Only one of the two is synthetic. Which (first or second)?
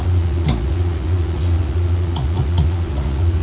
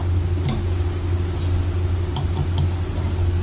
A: first